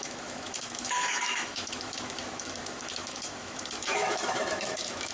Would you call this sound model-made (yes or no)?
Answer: yes